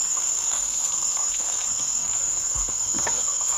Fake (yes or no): yes